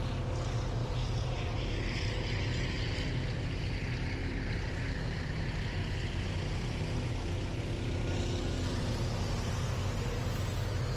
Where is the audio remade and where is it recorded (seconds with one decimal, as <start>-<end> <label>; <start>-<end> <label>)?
0.0-0.8 recorded; 0.8-2.4 remade; 2.4-4.2 recorded; 4.2-4.8 remade; 4.8-11.0 recorded

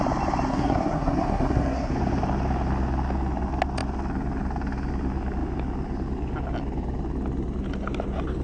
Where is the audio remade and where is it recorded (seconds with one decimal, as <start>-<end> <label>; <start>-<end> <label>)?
0.0-0.5 recorded; 0.5-1.9 remade; 1.9-8.4 recorded

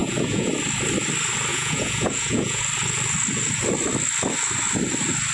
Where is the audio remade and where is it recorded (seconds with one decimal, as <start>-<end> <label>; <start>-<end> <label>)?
0.0-0.5 remade; 0.5-1.5 recorded; 1.5-2.6 remade; 2.6-5.3 recorded

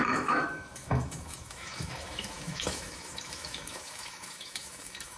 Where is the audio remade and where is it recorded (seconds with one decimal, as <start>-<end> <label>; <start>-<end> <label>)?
0.0-5.2 remade

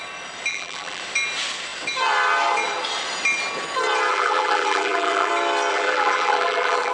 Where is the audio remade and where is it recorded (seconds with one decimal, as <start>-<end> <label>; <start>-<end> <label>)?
0.0-0.5 recorded; 0.5-1.0 remade; 1.0-4.1 recorded; 4.1-5.3 remade; 5.3-5.7 recorded; 5.7-6.9 remade

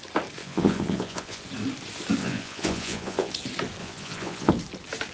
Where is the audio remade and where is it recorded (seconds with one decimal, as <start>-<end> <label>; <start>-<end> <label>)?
0.0-0.4 recorded; 0.4-1.4 remade; 1.4-2.2 recorded; 2.2-3.3 remade; 3.3-3.8 recorded; 3.8-4.5 remade; 4.5-5.1 recorded